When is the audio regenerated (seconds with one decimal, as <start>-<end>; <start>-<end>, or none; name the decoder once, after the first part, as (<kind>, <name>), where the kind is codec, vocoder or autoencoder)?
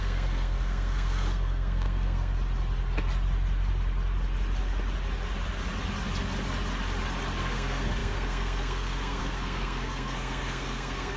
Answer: 0.0-2.3 (codec, SNAC); 7.4-11.2